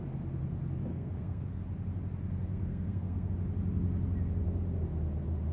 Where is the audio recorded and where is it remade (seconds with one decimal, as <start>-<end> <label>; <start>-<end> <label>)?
0.0-0.9 recorded; 0.9-1.6 remade; 1.6-2.5 recorded; 2.5-3.3 remade; 3.3-5.5 recorded